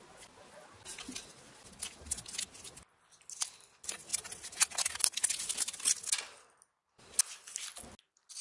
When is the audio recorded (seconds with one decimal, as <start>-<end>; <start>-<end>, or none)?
0.0-8.4